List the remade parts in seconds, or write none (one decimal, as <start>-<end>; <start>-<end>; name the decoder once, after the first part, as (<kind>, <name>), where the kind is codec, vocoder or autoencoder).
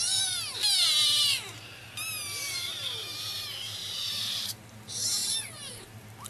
3.8-4.8 (vocoder, BigVGAN v2); 5.2-5.7